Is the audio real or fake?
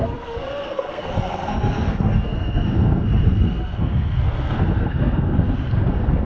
fake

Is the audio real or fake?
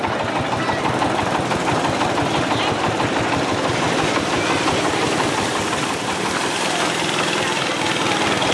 real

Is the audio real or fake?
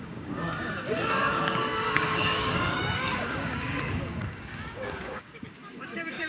fake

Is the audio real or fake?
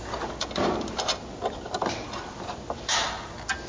real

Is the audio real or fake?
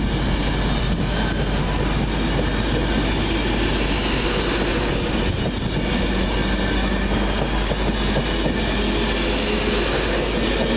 real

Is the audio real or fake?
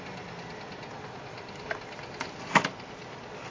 real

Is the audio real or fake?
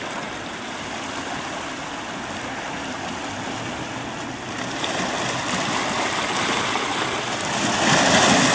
real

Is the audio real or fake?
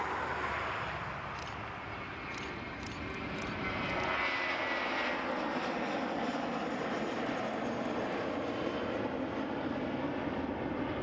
real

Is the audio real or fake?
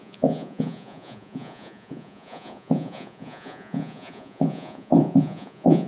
fake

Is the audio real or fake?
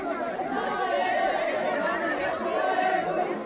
real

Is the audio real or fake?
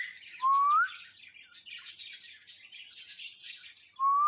real